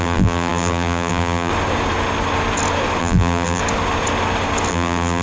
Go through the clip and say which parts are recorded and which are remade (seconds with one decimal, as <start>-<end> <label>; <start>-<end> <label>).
0.0-1.5 remade; 1.5-3.0 recorded; 3.0-3.6 remade; 3.6-4.7 recorded; 4.7-5.2 remade